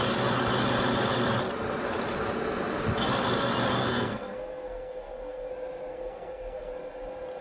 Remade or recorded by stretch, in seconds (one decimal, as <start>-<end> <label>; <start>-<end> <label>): 0.0-3.8 recorded; 3.8-5.5 remade; 5.5-5.9 recorded; 5.9-6.7 remade; 6.7-7.4 recorded